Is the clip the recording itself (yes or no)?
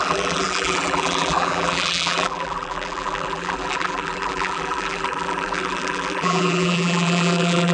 no